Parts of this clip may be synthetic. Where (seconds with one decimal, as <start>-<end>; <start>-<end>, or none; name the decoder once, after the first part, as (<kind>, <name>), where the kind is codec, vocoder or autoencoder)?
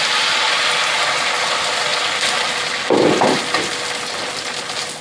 none